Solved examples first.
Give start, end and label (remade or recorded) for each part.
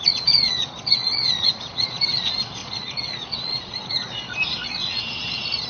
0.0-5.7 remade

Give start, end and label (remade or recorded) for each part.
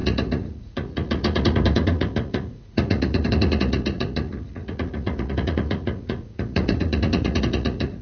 0.0-8.0 remade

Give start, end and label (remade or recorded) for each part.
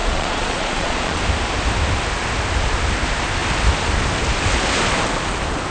0.0-1.2 remade; 1.2-5.7 recorded